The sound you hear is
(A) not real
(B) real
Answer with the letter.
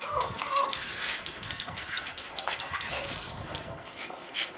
A